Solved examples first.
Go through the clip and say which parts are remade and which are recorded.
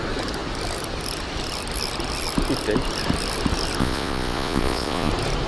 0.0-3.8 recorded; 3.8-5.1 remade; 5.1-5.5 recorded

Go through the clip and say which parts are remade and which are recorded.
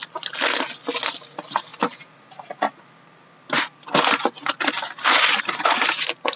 0.0-6.4 recorded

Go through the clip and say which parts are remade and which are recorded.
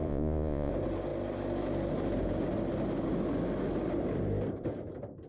0.0-0.7 remade; 0.7-5.3 recorded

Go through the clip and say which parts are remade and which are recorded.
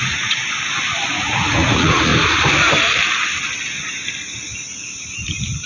0.0-0.4 remade; 0.4-1.1 recorded; 1.1-2.1 remade; 2.1-5.7 recorded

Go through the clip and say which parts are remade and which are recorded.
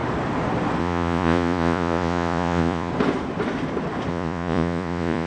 0.0-0.8 recorded; 0.8-2.9 remade; 2.9-4.1 recorded; 4.1-5.3 remade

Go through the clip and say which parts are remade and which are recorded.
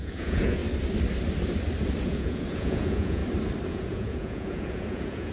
0.0-0.6 remade; 0.6-2.0 recorded; 2.0-3.2 remade; 3.2-3.7 recorded; 3.7-5.3 remade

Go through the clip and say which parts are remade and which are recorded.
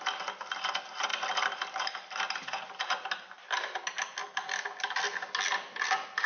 0.0-6.3 recorded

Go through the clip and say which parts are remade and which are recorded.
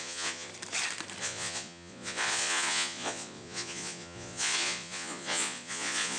0.0-0.5 remade; 0.5-1.2 recorded; 1.2-6.2 remade